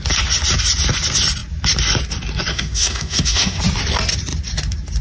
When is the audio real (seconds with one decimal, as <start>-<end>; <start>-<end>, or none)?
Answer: 0.0-2.5; 3.6-5.0

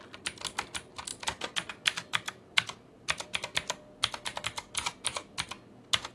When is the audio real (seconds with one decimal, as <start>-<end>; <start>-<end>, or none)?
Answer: 0.0-6.1

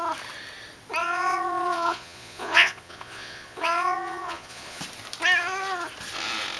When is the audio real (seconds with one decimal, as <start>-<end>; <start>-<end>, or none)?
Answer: 0.0-1.0; 4.8-6.6

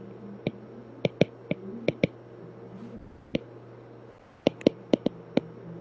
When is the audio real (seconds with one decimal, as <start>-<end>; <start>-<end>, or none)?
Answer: 0.0-5.8

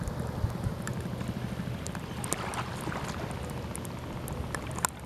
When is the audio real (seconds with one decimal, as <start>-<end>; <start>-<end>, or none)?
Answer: 0.0-5.1

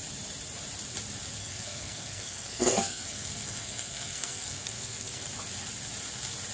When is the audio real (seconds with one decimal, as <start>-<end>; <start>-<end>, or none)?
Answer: 0.0-1.4; 5.3-6.5